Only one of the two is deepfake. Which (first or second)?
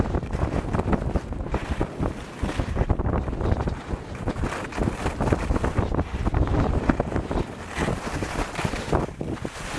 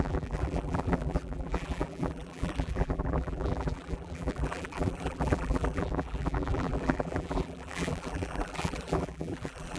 second